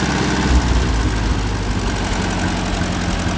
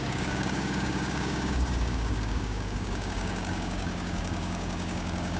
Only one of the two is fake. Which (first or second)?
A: second